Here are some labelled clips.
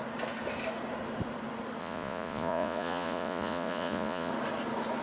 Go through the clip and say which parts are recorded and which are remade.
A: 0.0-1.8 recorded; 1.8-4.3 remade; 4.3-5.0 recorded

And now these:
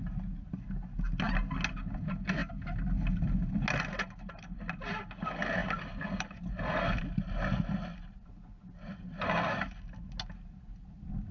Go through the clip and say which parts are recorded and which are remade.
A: 0.0-11.3 recorded

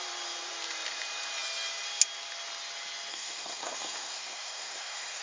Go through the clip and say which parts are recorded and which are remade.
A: 0.0-3.1 recorded; 3.1-5.2 remade

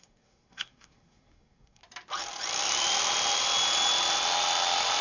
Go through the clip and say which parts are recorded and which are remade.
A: 0.0-1.8 remade; 1.8-5.0 recorded

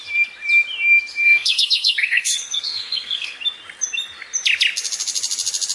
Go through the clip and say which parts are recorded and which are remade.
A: 0.0-1.2 recorded; 1.2-3.4 remade; 3.4-5.7 recorded

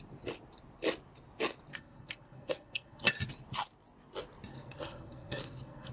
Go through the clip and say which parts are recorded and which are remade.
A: 0.0-1.7 recorded; 1.7-3.1 remade; 3.1-4.5 recorded; 4.5-5.9 remade

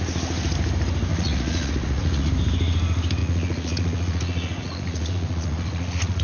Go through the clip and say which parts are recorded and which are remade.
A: 0.0-1.1 recorded; 1.1-2.3 remade; 2.3-3.2 recorded; 3.2-6.2 remade